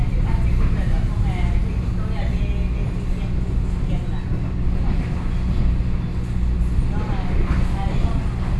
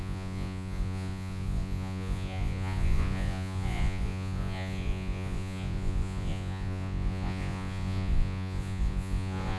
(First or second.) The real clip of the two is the first